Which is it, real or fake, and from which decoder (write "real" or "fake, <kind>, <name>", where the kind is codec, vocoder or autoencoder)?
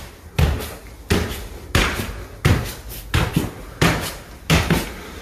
real